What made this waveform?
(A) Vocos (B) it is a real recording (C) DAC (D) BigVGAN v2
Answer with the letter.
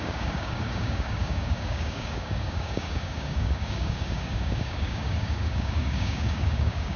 C